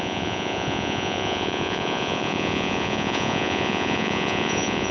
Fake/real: fake